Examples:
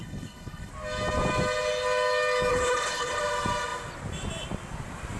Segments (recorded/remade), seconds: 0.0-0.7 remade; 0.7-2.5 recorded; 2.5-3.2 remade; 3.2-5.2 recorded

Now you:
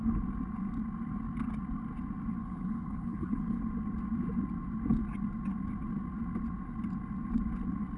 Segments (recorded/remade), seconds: 0.0-2.4 recorded; 2.4-3.6 remade; 3.6-8.0 recorded

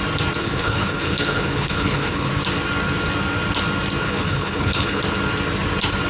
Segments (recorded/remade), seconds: 0.0-0.4 recorded; 0.4-2.3 remade; 2.3-4.0 recorded; 4.0-5.0 remade; 5.0-6.1 recorded

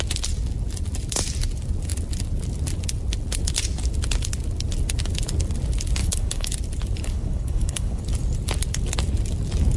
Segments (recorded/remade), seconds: 0.0-6.0 recorded; 6.0-6.5 remade; 6.5-7.0 recorded; 7.0-8.0 remade; 8.0-9.8 recorded

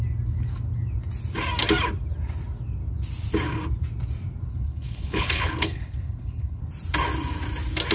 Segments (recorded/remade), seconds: 0.0-4.5 recorded; 4.5-6.6 remade; 6.6-7.9 recorded

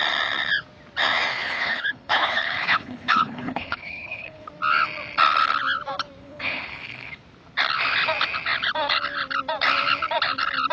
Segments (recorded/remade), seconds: 0.0-1.3 recorded; 1.3-4.5 remade; 4.5-6.2 recorded; 6.2-7.2 remade; 7.2-10.7 recorded